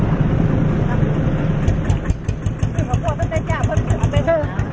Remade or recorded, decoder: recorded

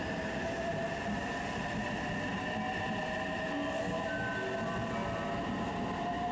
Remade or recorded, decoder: recorded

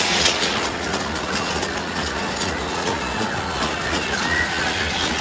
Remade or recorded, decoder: remade, vocoder, Vocos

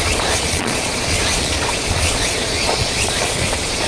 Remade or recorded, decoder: remade, vocoder, Vocos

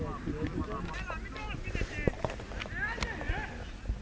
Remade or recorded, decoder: recorded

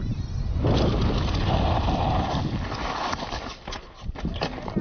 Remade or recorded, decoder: recorded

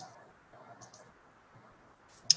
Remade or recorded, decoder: recorded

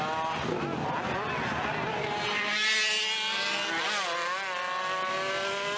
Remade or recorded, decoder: recorded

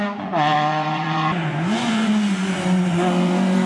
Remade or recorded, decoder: remade, vocoder, Vocos